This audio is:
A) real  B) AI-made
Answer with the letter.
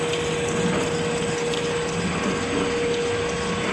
A